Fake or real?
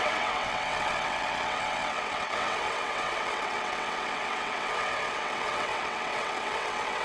fake